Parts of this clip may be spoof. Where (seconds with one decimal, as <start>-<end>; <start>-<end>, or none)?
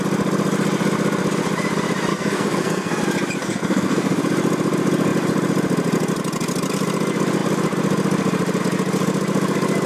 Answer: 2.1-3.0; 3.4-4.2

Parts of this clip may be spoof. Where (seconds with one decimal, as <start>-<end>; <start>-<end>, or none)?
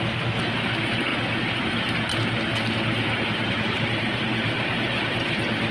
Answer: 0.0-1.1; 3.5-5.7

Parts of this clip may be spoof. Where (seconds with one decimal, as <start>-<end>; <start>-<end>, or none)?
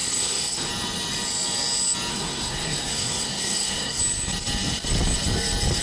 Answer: 0.0-0.7; 2.1-4.0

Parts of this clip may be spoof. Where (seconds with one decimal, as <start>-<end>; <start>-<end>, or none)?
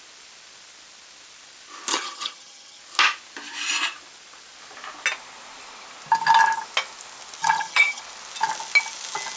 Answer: 1.9-2.8; 7.4-8.0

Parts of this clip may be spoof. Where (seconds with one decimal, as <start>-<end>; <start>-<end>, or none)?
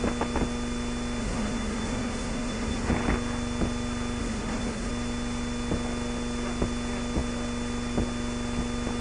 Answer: 1.2-2.9; 4.2-4.9